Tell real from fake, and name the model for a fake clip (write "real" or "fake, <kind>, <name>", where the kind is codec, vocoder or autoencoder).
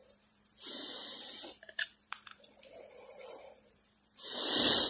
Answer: fake, vocoder, BigVGAN v2